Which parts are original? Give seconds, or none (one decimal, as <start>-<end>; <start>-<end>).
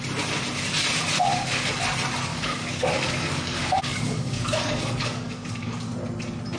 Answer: 0.0-1.3; 1.8-2.3; 5.8-6.6